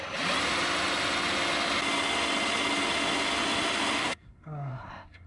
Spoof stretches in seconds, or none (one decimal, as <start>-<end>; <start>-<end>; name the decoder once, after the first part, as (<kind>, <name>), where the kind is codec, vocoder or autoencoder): 4.0-5.3 (codec, SNAC)